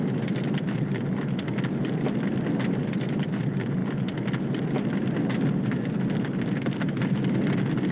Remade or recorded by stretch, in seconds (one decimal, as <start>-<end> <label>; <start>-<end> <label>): 0.0-7.9 recorded

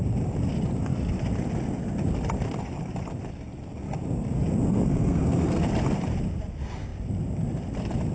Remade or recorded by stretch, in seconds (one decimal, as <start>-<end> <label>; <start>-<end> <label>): 0.0-4.7 recorded; 4.7-5.7 remade; 5.7-8.1 recorded

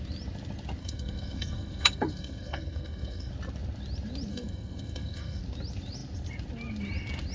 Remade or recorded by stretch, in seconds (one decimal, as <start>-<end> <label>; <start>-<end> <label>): 0.0-0.8 recorded; 0.8-3.3 remade; 3.3-4.3 recorded; 4.3-5.4 remade; 5.4-7.3 recorded

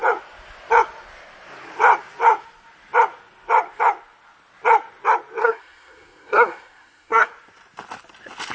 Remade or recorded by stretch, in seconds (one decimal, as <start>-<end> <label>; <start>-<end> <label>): 0.0-5.4 recorded; 5.4-7.3 remade; 7.3-8.5 recorded

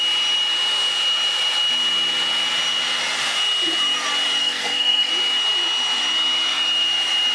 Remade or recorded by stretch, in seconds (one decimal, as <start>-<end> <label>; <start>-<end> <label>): 0.0-4.4 recorded; 4.4-5.1 remade; 5.1-7.3 recorded